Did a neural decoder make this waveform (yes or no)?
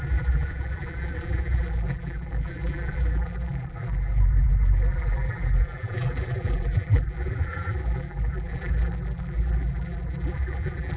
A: yes